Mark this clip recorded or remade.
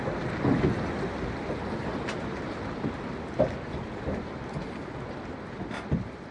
recorded